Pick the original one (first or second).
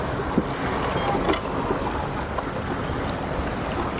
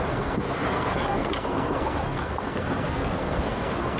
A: first